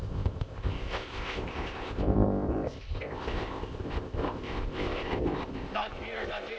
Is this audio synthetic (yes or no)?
yes